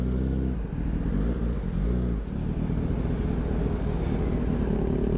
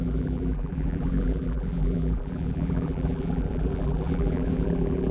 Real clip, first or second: first